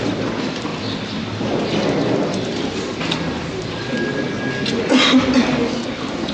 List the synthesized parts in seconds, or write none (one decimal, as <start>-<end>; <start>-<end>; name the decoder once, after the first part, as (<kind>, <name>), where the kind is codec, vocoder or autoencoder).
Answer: none